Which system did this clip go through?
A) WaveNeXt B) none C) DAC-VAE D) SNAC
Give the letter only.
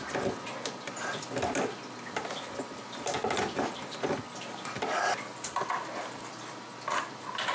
B